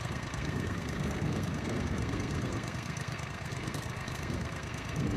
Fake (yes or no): yes